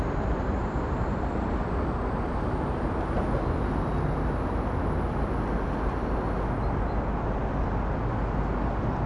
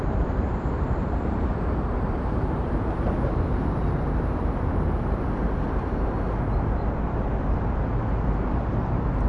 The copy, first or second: second